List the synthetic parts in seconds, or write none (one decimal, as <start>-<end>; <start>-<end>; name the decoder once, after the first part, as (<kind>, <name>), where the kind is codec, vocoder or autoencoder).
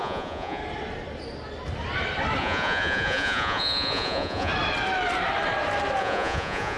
0.0-0.6 (vocoder, Vocos); 2.4-4.5; 6.0-6.8